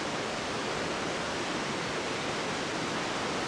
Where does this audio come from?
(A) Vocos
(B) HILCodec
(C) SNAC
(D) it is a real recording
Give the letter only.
D